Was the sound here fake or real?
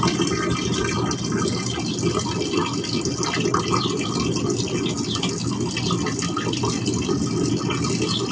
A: real